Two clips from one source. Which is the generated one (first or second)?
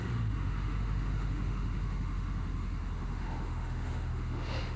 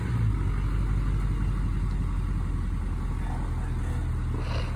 first